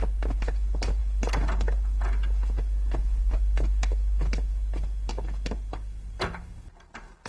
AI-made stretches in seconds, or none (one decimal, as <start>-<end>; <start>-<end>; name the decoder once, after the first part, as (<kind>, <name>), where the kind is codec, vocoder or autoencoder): none